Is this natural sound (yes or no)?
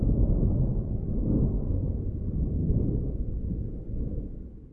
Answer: yes